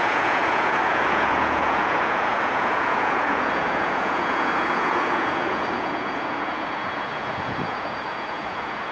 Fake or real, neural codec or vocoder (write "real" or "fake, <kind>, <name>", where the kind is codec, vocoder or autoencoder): fake, vocoder, Vocos